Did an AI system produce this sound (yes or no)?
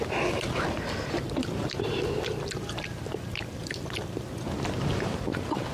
no